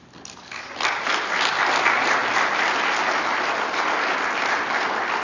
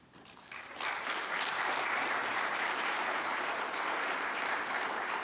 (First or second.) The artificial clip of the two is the second